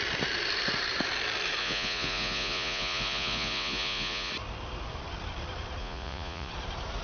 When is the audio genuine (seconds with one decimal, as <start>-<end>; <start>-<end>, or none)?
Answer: 0.0-1.6; 4.3-5.8; 6.5-7.0